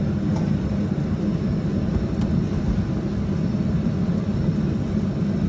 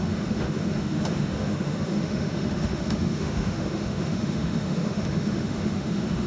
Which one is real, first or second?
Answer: first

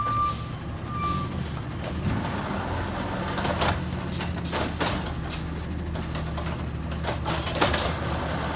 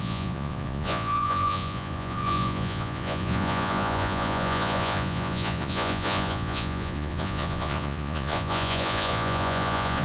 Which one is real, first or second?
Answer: first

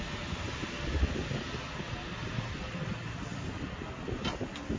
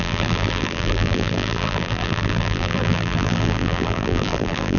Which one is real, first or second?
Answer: first